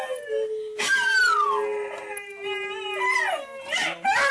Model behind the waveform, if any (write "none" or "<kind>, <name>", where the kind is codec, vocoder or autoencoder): none